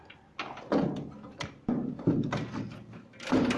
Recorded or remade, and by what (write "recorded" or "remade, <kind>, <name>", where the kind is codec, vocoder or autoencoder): recorded